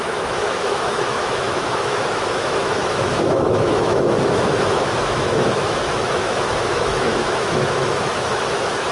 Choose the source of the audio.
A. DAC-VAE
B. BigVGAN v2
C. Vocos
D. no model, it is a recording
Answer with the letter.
A